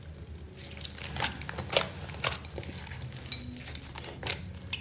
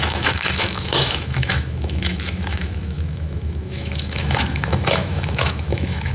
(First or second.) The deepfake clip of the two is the second